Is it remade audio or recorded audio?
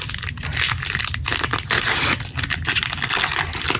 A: recorded